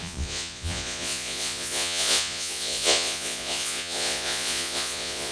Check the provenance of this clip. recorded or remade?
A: remade